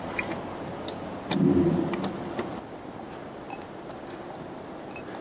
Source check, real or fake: real